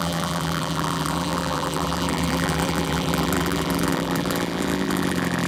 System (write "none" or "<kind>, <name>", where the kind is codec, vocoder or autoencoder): vocoder, BigVGAN v2